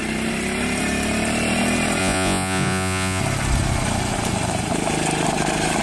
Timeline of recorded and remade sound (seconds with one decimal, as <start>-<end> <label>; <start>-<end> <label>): 0.0-2.0 recorded; 2.0-3.2 remade; 3.2-5.8 recorded